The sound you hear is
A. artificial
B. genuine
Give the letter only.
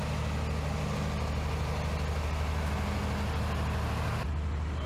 B